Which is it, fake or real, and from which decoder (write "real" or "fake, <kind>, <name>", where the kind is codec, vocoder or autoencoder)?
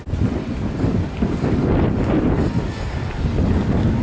real